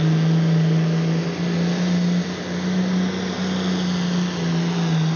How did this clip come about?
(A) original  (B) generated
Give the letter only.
A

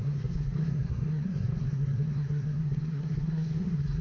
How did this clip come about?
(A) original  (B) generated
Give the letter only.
B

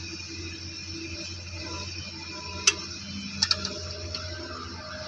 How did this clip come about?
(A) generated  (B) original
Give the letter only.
B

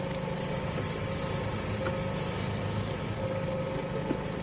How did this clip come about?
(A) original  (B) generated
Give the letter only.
A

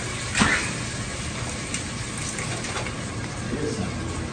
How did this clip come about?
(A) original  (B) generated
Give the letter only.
A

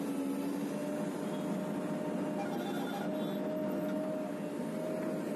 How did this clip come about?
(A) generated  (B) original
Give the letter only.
B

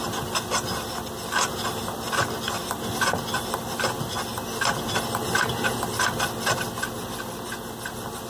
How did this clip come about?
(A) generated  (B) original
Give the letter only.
B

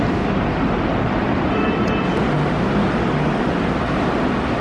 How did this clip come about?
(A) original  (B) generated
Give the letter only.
A